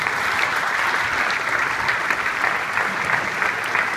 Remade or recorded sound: recorded